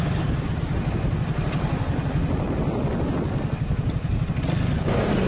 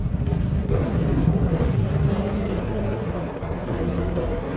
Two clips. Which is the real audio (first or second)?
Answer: first